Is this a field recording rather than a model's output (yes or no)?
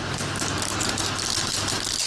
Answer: yes